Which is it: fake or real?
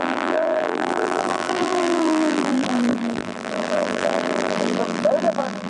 fake